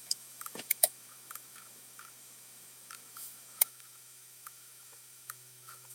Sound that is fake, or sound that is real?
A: fake